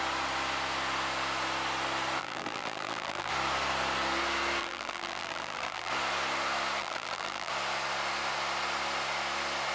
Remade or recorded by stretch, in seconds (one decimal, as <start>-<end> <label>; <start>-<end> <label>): 0.0-2.2 recorded; 2.2-3.3 remade; 3.3-4.6 recorded; 4.6-5.9 remade; 5.9-6.8 recorded; 6.8-7.5 remade; 7.5-9.7 recorded